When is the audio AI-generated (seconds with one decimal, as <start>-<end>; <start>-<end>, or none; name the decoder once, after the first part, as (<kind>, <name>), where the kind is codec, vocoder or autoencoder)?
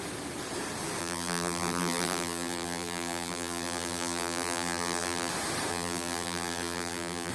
1.0-5.3 (vocoder, BigVGAN v2); 5.7-7.3